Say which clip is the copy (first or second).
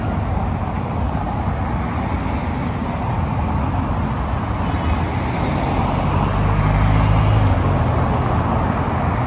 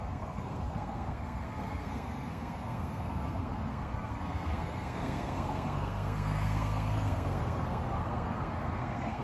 second